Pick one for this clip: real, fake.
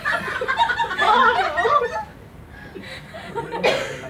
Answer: real